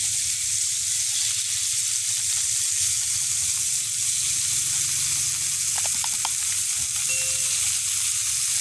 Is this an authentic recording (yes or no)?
yes